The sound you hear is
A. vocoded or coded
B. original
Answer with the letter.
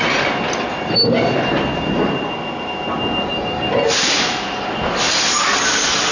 B